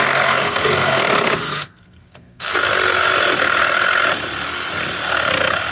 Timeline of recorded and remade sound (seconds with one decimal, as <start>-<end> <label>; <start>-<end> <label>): 0.0-2.5 remade; 2.5-5.7 recorded